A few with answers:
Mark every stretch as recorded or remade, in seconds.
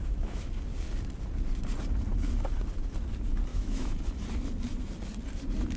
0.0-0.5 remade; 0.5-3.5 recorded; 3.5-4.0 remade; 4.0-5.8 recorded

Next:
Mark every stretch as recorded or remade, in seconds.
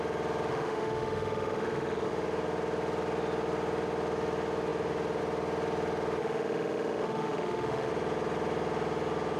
0.0-0.5 recorded; 0.5-2.1 remade; 2.1-6.2 recorded; 6.2-7.9 remade; 7.9-9.4 recorded